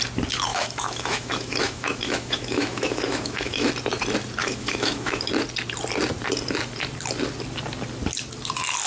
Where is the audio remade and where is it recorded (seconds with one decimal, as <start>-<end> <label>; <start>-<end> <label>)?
0.0-0.5 recorded; 0.5-3.7 remade; 3.7-4.4 recorded; 4.4-5.3 remade; 5.3-8.9 recorded

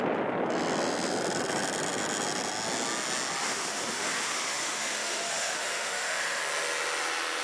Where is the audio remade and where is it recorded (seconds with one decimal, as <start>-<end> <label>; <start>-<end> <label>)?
0.0-3.4 recorded; 3.4-6.4 remade; 6.4-7.4 recorded

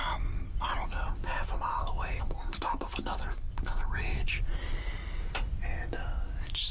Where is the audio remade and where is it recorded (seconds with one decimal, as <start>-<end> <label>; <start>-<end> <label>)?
0.0-1.7 recorded; 1.7-3.9 remade; 3.9-6.7 recorded